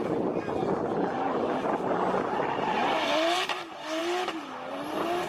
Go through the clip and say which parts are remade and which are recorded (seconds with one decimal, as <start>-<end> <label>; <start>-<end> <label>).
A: 0.0-5.3 recorded

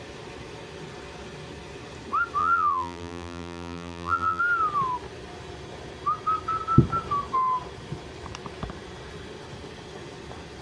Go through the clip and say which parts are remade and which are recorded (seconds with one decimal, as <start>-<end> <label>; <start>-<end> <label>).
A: 0.0-2.4 recorded; 2.4-4.4 remade; 4.4-10.6 recorded

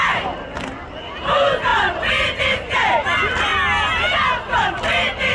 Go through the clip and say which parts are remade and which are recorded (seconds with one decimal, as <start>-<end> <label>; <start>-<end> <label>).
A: 0.0-1.7 remade; 1.7-2.4 recorded; 2.4-3.5 remade; 3.5-5.3 recorded

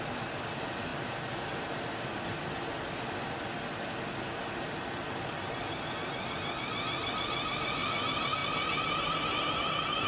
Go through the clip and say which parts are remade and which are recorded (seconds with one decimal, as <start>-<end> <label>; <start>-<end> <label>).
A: 0.0-10.1 recorded

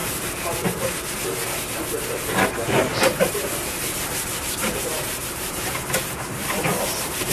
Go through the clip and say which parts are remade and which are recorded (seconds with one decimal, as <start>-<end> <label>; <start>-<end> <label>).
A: 0.0-0.9 remade; 0.9-2.9 recorded; 2.9-7.3 remade